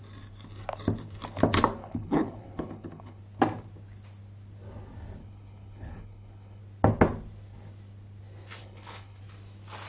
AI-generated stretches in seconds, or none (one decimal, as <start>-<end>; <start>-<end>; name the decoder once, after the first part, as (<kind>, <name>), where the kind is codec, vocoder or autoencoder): 1.8-3.2 (codec, HILCodec); 5.2-6.6; 8.6-9.2